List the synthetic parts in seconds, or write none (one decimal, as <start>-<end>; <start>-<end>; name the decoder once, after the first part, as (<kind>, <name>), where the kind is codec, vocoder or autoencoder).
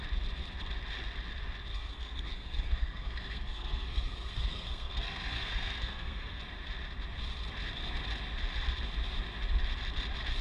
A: 1.7-6.4 (codec, SNAC)